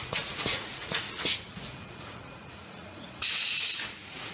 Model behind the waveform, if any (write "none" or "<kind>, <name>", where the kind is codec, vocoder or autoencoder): vocoder, Vocos